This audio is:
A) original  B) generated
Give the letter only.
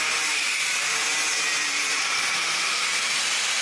B